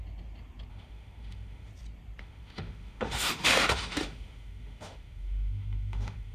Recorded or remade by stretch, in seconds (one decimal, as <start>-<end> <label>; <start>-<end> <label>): 0.0-0.7 recorded; 0.7-1.7 remade; 1.7-2.2 recorded; 2.2-6.3 remade